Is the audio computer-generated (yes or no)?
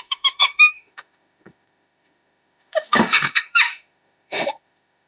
yes